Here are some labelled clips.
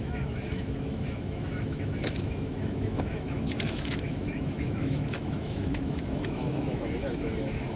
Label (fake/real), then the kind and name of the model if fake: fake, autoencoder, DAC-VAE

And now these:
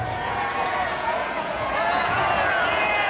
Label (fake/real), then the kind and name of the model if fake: fake, vocoder, Vocos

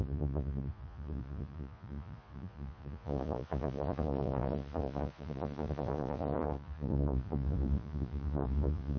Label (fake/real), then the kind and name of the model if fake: fake, vocoder, Vocos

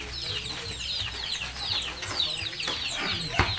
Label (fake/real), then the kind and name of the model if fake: real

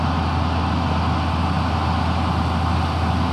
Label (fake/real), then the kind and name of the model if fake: real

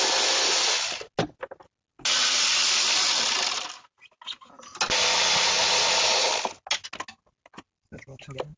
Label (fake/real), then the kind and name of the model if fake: real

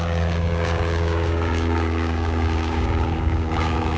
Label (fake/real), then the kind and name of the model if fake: fake, codec, DAC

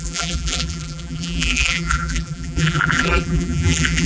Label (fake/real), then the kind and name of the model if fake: fake, vocoder, BigVGAN v2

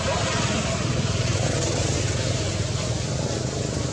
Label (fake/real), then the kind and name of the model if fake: real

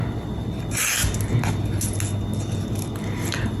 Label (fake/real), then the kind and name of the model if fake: real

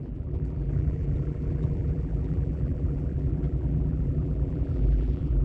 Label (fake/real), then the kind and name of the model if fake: fake, vocoder, BigVGAN v2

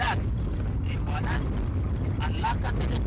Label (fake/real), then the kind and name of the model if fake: real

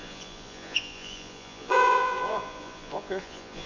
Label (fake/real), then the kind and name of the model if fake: fake, vocoder, Vocos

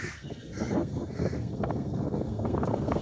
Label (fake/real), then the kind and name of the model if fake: fake, codec, SNAC